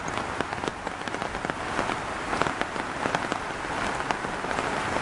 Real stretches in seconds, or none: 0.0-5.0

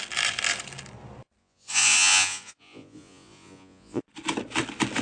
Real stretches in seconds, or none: 0.0-1.4; 4.0-5.0

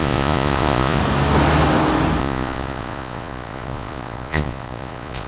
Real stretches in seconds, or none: 1.0-2.2